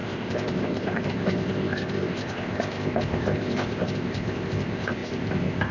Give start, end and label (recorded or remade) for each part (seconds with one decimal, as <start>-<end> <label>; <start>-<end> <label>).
0.0-5.7 remade